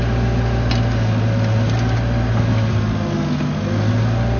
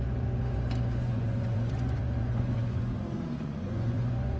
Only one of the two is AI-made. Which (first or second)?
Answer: second